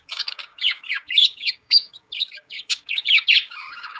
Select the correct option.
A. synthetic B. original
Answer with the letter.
A